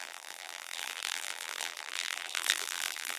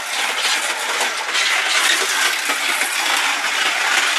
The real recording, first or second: second